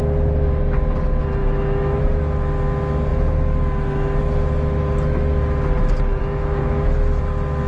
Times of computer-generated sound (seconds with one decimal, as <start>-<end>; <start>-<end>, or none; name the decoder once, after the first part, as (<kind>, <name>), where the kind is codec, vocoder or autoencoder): 1.4-2.0 (autoencoder, DAC-VAE); 6.2-7.2